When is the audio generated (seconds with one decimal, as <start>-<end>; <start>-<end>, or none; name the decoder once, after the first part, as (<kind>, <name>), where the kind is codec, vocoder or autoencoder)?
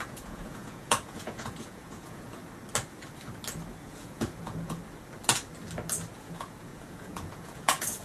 0.0-2.4 (vocoder, Vocos); 3.8-4.8; 6.1-8.0